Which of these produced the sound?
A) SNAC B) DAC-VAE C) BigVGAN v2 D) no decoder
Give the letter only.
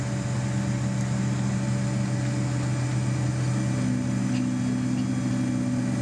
D